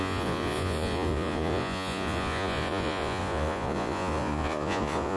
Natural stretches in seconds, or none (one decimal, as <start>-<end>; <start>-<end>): none